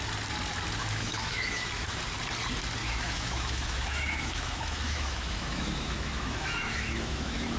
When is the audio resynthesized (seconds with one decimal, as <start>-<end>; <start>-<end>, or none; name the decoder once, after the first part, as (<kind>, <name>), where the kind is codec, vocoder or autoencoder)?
0.8-2.0 (autoencoder, DAC-VAE); 2.8-7.6